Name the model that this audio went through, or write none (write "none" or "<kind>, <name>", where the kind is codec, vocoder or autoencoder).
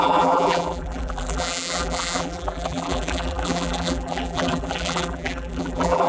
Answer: vocoder, BigVGAN v2